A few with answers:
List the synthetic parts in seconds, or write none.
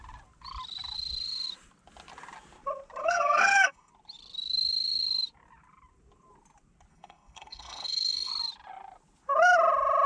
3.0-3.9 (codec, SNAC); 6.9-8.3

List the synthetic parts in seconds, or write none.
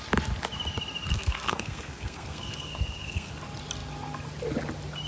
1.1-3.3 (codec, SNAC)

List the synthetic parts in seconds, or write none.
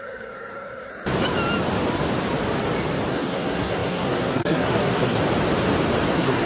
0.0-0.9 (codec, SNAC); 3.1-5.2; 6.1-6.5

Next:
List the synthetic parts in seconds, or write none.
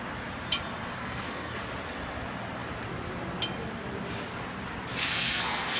1.0-1.6 (codec, SNAC); 5.0-5.8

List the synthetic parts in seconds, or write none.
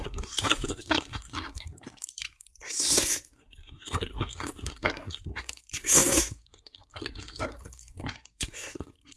0.0-9.2 (codec, SNAC)